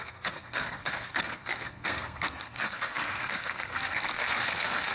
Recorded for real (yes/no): no